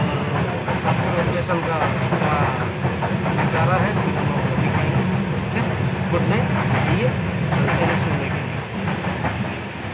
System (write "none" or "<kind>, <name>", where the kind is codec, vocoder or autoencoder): none